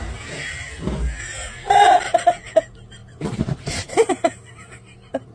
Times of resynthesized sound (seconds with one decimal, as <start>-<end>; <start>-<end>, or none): 3.0-4.1